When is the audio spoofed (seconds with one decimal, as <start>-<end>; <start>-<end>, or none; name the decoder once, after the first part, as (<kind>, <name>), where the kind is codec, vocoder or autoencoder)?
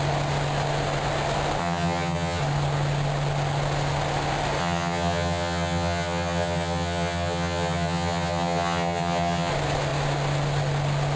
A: 1.6-2.4 (vocoder, HiFi-GAN); 4.6-9.5